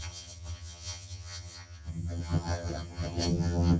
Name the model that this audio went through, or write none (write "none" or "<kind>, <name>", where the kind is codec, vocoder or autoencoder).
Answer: vocoder, HiFi-GAN